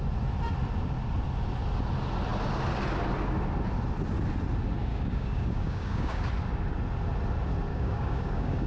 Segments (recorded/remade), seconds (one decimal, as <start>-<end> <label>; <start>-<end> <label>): 0.0-4.9 recorded; 4.9-6.3 remade; 6.3-7.7 recorded; 7.7-8.7 remade